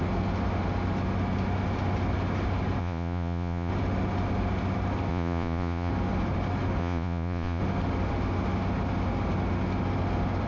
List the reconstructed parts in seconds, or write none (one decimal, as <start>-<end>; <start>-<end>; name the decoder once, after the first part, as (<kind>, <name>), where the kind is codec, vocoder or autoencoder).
2.8-3.7 (vocoder, Vocos); 5.1-5.9; 6.8-7.6